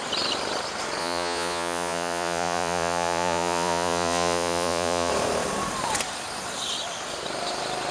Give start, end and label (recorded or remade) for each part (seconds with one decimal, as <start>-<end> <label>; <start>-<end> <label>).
0.0-1.0 recorded; 1.0-5.1 remade; 5.1-7.9 recorded